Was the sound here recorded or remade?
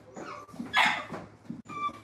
recorded